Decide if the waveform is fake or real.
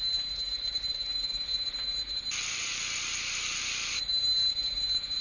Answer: fake